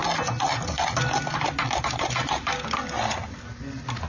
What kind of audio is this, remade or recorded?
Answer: recorded